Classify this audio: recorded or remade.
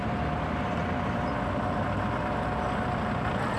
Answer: recorded